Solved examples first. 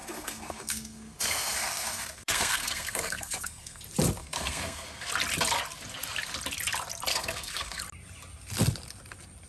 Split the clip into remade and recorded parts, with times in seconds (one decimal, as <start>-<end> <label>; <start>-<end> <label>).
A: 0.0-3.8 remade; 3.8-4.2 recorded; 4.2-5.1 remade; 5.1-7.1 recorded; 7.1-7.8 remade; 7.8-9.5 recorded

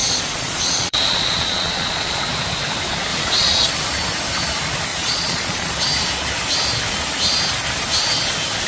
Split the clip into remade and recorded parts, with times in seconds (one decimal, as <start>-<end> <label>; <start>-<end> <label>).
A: 0.0-2.2 remade; 2.2-3.1 recorded; 3.1-3.7 remade; 3.7-4.9 recorded; 4.9-5.7 remade; 5.7-8.7 recorded

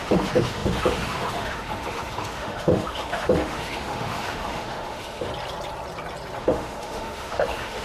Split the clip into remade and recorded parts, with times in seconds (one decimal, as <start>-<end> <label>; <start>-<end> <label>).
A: 0.0-5.3 remade; 5.3-6.4 recorded; 6.4-7.8 remade

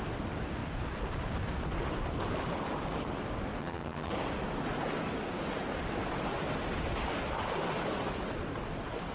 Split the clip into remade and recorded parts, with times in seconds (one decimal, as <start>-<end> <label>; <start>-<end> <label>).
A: 0.0-3.6 recorded; 3.6-4.1 remade; 4.1-9.1 recorded

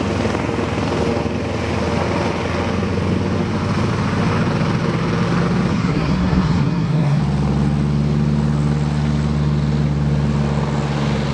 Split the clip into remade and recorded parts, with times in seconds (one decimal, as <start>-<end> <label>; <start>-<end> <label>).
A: 0.0-5.7 recorded; 5.7-7.2 remade; 7.2-11.3 recorded

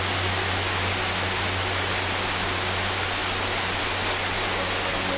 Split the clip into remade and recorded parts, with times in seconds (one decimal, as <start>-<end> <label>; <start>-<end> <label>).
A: 0.0-5.2 recorded

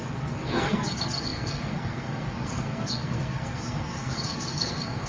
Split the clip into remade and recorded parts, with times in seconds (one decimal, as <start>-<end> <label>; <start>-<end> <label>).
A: 0.0-5.1 remade